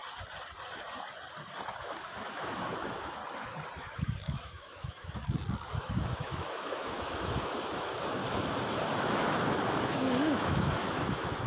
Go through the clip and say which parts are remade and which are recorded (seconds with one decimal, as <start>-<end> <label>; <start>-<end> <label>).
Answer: 0.0-1.8 recorded; 1.8-3.2 remade; 3.2-3.8 recorded; 3.8-8.2 remade; 8.2-9.8 recorded; 9.8-11.5 remade